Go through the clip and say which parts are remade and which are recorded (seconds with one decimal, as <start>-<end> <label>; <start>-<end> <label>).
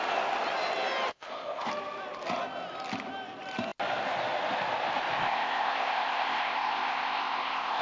0.0-1.1 recorded; 1.1-1.7 remade; 1.7-5.2 recorded; 5.2-7.8 remade